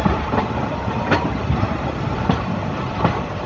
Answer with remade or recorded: recorded